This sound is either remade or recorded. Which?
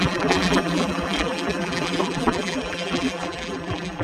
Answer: remade